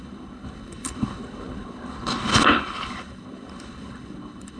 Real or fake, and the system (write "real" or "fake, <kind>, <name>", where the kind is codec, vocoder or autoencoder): fake, codec, HILCodec